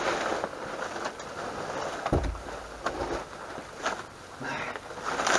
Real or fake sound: real